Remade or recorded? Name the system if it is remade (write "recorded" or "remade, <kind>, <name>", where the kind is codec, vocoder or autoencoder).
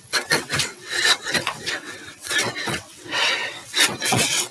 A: remade, vocoder, WaveNeXt